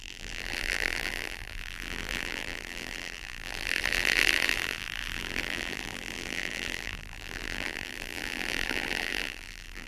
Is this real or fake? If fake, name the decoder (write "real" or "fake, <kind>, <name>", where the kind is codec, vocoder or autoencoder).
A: fake, vocoder, BigVGAN v2